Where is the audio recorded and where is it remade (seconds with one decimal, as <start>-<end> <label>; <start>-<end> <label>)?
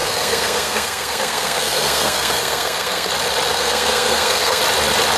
0.0-3.1 remade; 3.1-3.5 recorded; 3.5-4.6 remade; 4.6-5.2 recorded